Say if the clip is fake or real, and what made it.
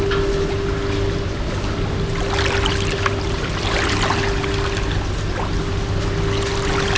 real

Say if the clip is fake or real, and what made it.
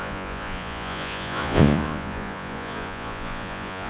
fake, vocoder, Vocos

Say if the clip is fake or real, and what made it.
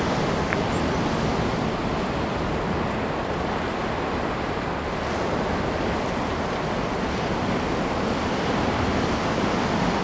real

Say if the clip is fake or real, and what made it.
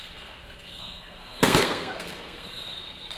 fake, codec, SNAC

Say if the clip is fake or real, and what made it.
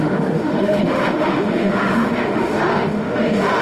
fake, autoencoder, DAC-VAE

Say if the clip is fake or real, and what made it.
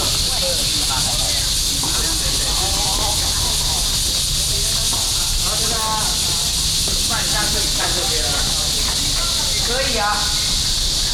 real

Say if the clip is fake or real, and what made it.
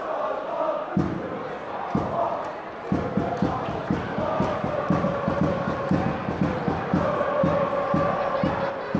real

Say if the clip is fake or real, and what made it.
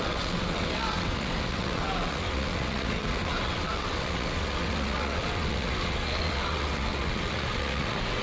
fake, vocoder, WaveNeXt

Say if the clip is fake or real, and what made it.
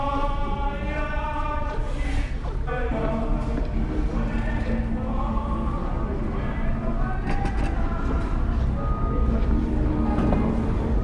real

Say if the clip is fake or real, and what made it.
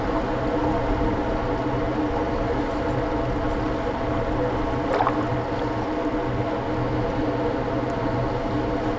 real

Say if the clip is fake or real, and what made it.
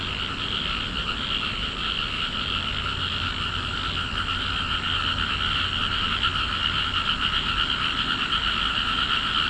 real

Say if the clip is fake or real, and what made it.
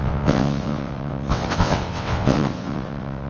fake, vocoder, WaveNeXt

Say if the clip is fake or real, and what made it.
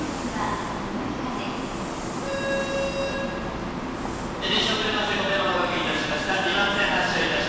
real